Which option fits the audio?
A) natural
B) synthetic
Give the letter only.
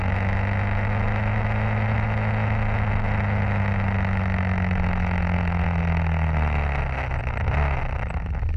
A